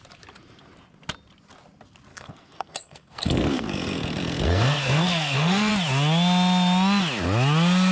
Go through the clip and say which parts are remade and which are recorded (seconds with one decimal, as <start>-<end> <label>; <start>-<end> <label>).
0.0-2.1 recorded; 2.1-5.7 remade; 5.7-7.9 recorded